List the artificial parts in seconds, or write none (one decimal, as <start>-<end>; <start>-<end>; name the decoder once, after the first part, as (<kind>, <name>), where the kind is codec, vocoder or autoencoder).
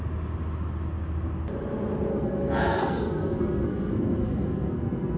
2.1-5.2 (codec, SNAC)